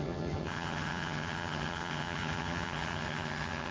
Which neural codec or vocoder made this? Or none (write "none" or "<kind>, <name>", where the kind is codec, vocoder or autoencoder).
vocoder, HiFi-GAN